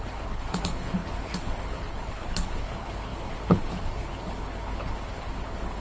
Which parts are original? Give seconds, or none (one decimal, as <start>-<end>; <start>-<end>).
none